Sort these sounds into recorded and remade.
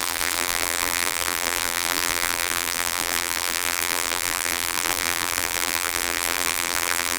remade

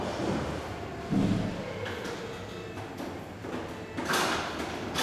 recorded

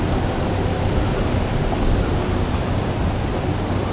recorded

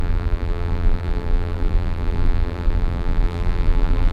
remade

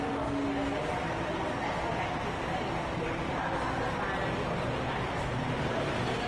recorded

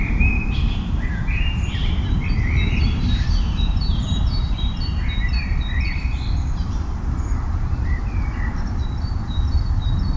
remade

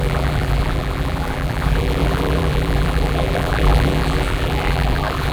remade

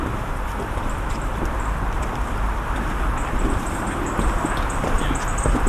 remade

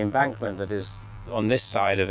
remade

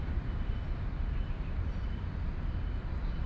remade